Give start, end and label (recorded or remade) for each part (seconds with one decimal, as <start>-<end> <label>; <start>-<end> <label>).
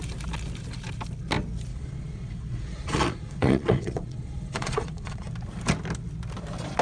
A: 0.0-1.7 recorded; 1.7-5.3 remade; 5.3-6.8 recorded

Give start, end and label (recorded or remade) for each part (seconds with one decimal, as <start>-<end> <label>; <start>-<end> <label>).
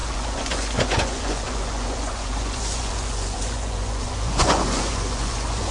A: 0.0-5.7 remade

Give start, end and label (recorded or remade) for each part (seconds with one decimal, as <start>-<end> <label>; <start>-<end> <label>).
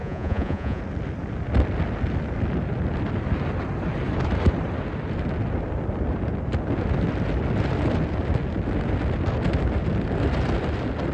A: 0.0-0.8 remade; 0.8-11.1 recorded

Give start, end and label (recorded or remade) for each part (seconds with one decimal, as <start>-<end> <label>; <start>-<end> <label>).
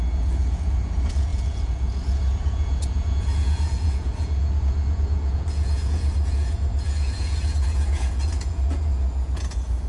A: 0.0-9.9 remade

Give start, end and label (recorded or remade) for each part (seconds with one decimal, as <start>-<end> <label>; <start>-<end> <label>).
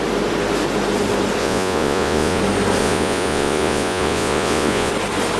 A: 0.0-1.4 recorded; 1.4-2.4 remade; 2.4-2.8 recorded; 2.8-4.9 remade; 4.9-5.4 recorded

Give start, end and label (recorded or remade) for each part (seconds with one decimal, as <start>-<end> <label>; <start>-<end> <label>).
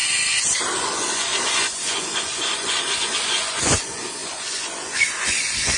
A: 0.0-0.8 recorded; 0.8-5.8 remade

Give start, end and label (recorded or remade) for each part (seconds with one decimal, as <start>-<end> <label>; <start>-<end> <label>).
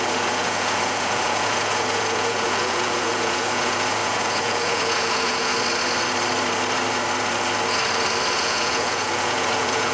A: 0.0-5.5 remade; 5.5-8.3 recorded; 8.3-9.9 remade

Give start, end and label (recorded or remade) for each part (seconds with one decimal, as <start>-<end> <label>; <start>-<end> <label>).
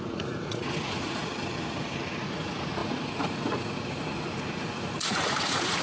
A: 0.0-1.3 remade; 1.3-2.2 recorded; 2.2-5.8 remade